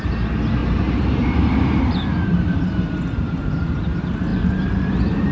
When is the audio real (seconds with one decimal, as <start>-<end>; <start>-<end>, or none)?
0.0-0.6; 2.5-4.3